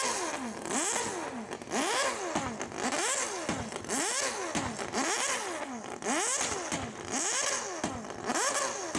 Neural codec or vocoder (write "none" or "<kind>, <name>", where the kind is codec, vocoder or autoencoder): none